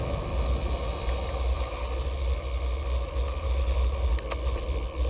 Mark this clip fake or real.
real